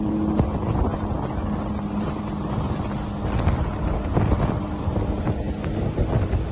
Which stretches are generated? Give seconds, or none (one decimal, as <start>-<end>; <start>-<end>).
none